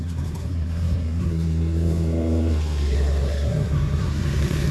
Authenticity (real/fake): fake